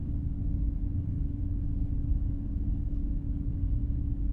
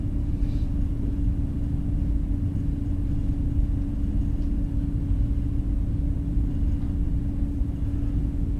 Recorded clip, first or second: second